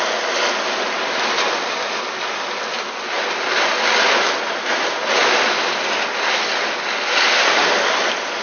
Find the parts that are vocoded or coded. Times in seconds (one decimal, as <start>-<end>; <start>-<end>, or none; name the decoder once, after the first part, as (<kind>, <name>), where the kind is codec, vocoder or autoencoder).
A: none